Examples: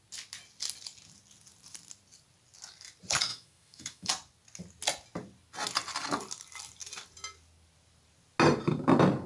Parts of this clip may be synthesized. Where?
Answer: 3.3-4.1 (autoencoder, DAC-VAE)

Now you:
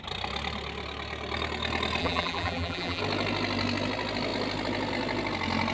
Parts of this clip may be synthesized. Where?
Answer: 2.0-3.0 (vocoder, BigVGAN v2)